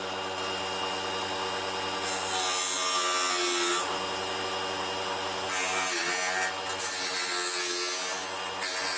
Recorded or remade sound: recorded